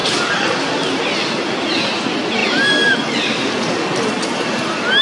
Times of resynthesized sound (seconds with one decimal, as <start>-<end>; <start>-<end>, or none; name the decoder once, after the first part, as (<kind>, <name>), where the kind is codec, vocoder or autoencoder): 0.0-1.8 (vocoder, BigVGAN v2); 2.4-4.2